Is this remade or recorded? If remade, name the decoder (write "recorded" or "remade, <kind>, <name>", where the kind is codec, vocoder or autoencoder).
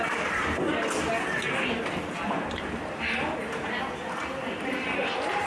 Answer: recorded